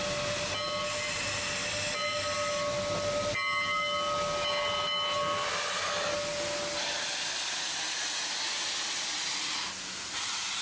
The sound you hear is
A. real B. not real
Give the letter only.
A